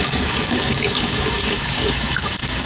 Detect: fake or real fake